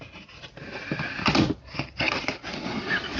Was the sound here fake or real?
real